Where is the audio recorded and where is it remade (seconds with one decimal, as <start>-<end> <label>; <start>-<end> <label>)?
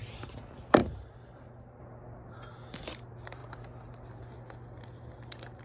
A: 0.0-5.6 recorded